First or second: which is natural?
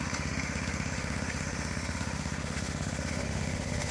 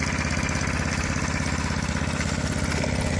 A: second